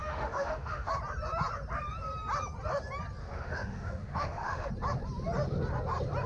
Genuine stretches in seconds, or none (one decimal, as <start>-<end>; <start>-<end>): 0.9-3.2; 4.7-6.3